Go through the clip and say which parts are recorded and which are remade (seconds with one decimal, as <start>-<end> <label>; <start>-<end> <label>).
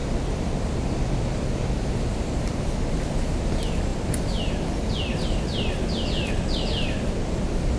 0.0-7.8 recorded